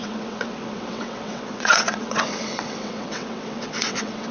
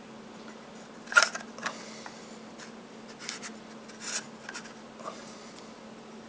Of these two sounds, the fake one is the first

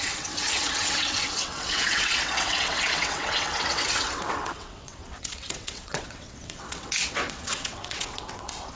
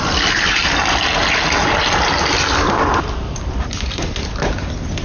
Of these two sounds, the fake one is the first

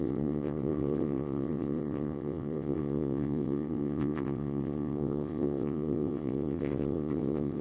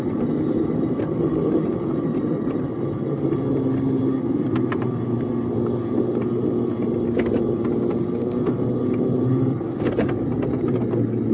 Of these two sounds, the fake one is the first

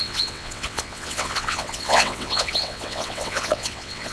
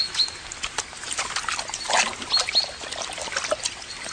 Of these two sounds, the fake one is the first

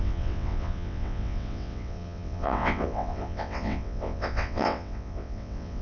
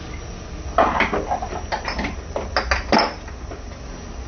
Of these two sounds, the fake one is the first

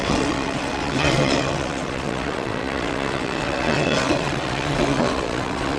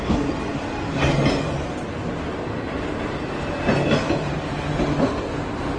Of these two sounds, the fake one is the first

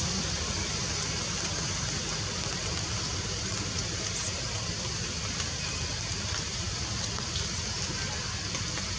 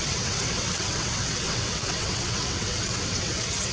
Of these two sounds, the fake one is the second